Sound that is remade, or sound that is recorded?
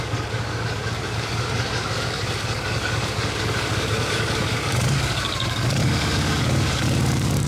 remade